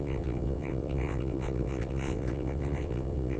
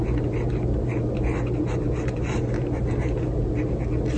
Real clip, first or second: second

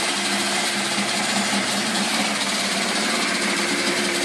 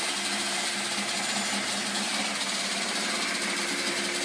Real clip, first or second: second